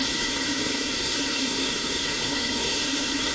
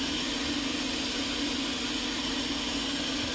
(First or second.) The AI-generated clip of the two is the first